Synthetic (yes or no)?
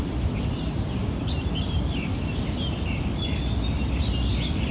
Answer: no